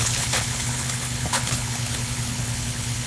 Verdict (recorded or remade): remade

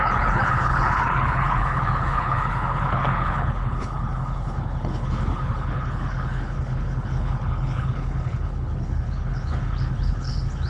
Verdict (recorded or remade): remade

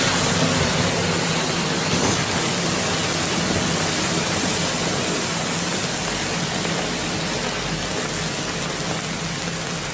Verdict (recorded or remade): recorded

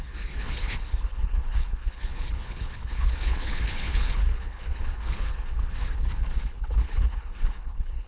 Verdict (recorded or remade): remade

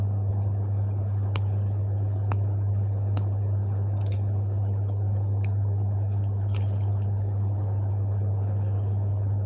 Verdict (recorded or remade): remade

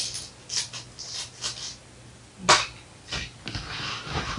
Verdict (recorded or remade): recorded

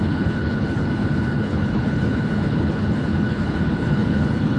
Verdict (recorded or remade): remade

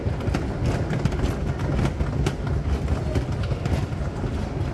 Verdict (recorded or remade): recorded